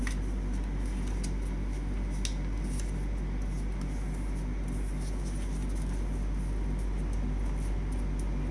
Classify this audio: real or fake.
real